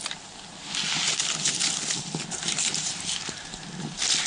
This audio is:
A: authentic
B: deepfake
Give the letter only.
A